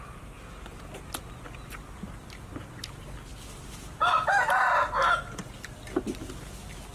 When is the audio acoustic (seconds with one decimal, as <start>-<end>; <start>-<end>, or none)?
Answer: 0.0-6.9